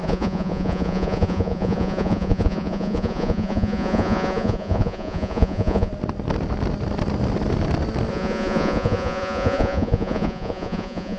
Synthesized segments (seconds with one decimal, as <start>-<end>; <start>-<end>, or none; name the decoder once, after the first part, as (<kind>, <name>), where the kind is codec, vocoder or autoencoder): 0.0-5.9 (vocoder, Vocos); 8.1-11.2